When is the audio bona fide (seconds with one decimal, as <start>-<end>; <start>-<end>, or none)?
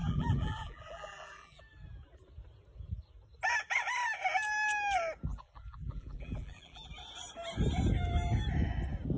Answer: 1.6-5.3; 6.9-9.2